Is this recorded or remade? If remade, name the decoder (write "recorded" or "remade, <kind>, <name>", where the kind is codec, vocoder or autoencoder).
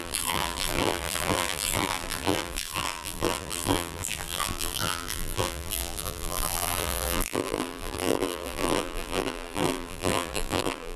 remade, vocoder, BigVGAN v2